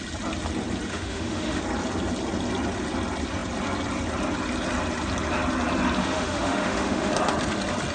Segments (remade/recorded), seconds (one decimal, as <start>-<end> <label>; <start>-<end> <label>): 0.0-0.9 recorded; 0.9-1.6 remade; 1.6-6.0 recorded; 6.0-7.1 remade; 7.1-7.9 recorded